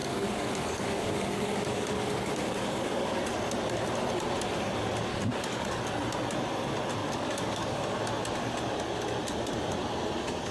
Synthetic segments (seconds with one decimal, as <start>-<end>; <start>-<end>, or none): 0.0-3.2; 5.1-5.8; 7.0-8.0

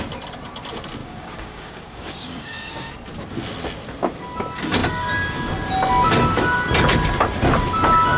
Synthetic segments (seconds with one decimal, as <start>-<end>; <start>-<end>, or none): 1.0-2.9